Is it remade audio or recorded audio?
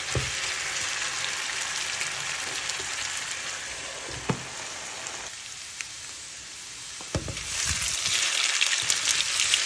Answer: recorded